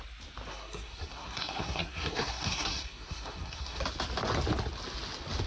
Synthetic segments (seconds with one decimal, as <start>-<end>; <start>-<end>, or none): 0.5-3.8